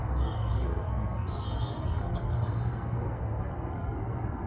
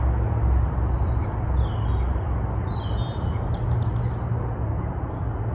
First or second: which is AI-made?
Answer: first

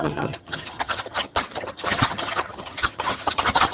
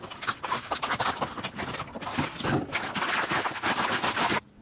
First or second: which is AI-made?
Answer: first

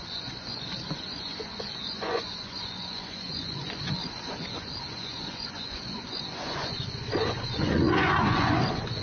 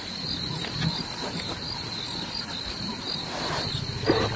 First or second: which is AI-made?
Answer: first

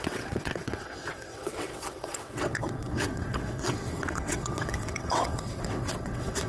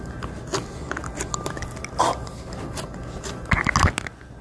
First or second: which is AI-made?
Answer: first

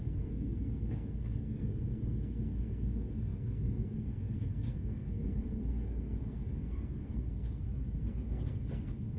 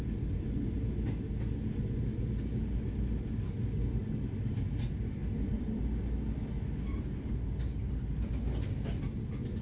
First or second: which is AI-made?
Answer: first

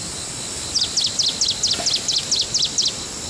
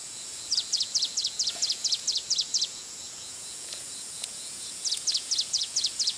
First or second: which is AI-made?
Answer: second